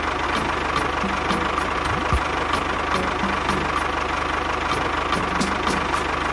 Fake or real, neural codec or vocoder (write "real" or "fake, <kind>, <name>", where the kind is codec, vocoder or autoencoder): real